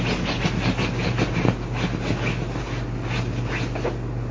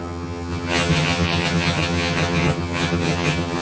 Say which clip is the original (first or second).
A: first